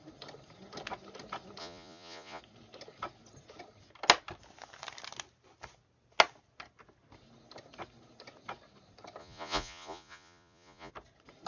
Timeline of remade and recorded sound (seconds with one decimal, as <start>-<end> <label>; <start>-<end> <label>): 0.0-1.6 recorded; 1.6-2.4 remade; 2.4-9.2 recorded; 9.2-10.9 remade; 10.9-11.5 recorded